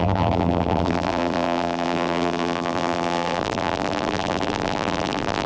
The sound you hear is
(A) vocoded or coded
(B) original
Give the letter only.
A